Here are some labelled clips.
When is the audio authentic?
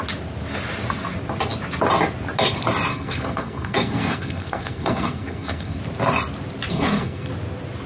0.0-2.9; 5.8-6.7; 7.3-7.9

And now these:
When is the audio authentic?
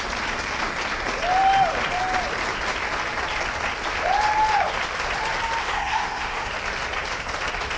0.0-5.6; 6.5-7.8